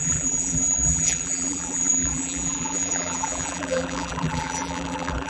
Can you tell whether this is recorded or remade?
remade